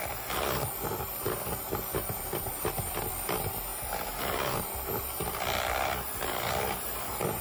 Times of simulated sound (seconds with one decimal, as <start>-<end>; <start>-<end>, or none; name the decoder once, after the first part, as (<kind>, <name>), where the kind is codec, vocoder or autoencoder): none